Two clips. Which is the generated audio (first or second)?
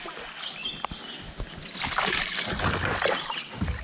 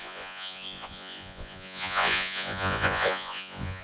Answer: second